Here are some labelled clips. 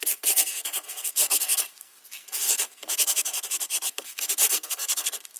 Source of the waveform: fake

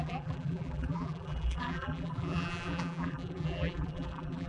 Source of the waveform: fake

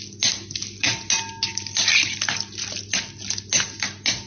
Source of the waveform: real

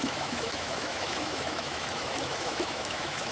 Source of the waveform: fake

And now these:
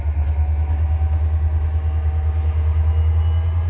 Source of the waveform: real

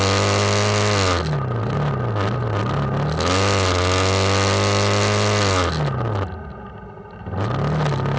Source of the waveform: real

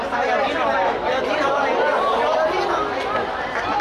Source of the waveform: real